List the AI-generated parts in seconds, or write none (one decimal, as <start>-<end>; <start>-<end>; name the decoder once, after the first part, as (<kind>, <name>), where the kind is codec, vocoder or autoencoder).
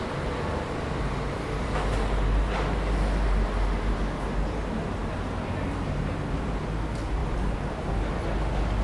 none